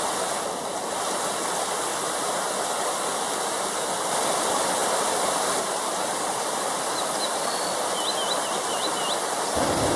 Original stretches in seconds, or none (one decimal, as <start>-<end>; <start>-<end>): 0.0-10.0